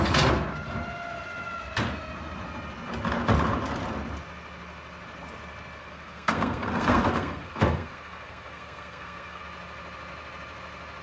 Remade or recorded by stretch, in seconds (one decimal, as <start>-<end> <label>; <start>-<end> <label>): 0.0-5.8 recorded; 5.8-9.4 remade; 9.4-11.0 recorded